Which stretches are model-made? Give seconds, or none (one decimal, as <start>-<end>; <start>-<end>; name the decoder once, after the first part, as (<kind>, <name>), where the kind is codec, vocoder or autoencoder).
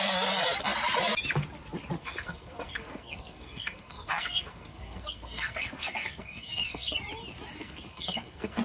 2.0-7.0 (codec, SNAC); 7.6-8.6